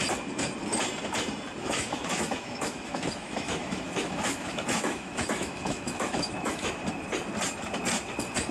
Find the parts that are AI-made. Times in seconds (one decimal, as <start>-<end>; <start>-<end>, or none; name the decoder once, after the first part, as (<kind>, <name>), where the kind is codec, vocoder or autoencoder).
1.6-6.7 (autoencoder, DAC-VAE)